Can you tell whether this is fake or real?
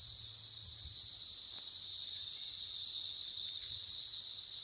fake